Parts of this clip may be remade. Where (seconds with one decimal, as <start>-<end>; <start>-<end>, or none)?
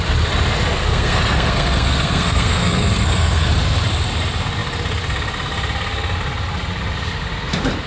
0.8-3.5